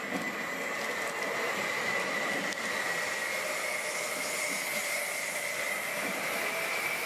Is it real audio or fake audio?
real